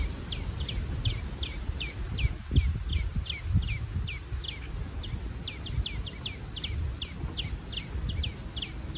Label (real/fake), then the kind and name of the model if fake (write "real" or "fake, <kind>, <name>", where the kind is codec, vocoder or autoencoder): real